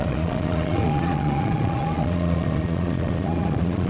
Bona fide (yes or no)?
no